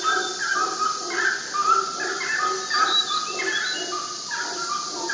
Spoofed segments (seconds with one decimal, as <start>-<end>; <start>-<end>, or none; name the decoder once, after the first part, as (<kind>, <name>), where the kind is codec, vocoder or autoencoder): none